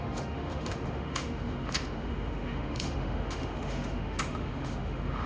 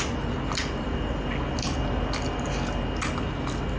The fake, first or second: first